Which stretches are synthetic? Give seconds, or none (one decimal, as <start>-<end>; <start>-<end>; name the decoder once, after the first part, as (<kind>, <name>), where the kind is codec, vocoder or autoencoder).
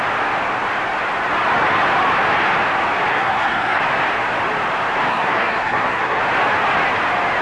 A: 3.1-3.8 (codec, SNAC); 5.1-6.2